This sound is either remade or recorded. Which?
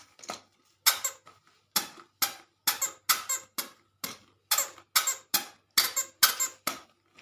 recorded